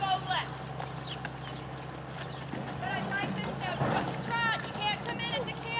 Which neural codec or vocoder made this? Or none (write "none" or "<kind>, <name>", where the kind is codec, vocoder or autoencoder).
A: none